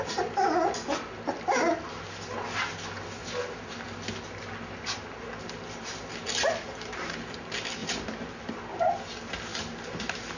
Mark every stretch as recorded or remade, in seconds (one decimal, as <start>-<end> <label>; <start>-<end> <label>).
0.0-5.4 recorded; 5.4-7.1 remade; 7.1-7.8 recorded; 7.8-8.5 remade; 8.5-10.4 recorded